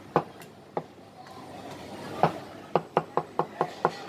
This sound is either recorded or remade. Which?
recorded